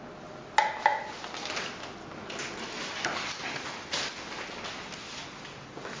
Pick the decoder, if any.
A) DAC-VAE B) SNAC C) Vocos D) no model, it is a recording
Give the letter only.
D